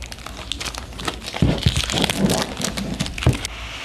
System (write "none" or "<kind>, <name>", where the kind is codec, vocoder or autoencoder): none